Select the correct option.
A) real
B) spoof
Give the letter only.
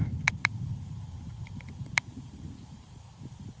B